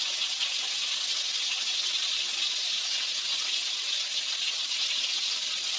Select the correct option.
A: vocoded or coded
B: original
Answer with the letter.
B